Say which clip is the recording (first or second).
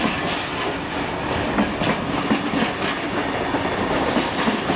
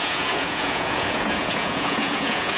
first